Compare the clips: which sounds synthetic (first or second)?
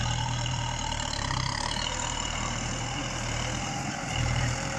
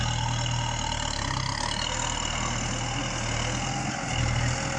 first